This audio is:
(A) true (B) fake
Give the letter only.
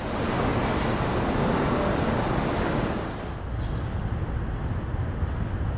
A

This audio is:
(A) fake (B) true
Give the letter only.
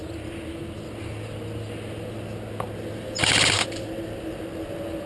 B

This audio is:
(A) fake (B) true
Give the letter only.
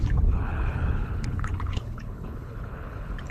A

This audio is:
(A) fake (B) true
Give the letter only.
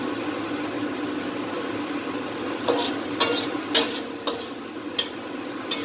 B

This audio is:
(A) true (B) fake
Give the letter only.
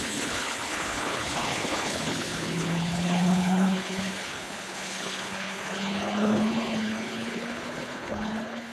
B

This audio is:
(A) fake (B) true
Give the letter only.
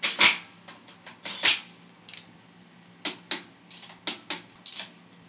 B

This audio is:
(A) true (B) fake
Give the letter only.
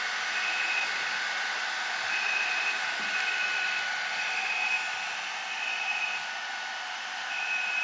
A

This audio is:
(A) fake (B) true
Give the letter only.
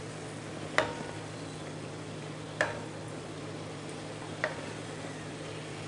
B